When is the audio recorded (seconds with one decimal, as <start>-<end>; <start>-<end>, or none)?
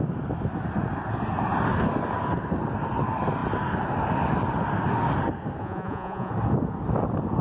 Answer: 0.0-5.6; 6.3-7.4